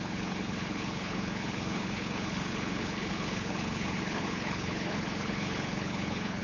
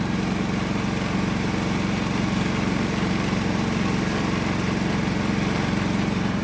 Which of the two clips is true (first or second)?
second